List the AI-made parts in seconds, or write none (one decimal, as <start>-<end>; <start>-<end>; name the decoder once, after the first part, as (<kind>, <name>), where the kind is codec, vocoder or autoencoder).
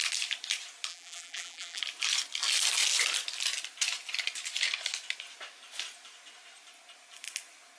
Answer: 0.9-1.8 (vocoder, BigVGAN v2)